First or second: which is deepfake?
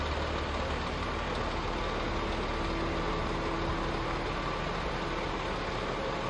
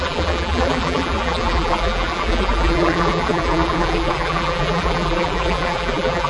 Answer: second